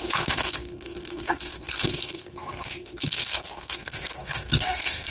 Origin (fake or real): fake